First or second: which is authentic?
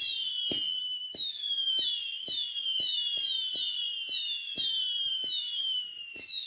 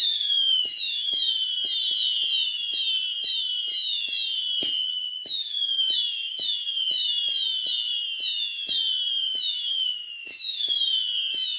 first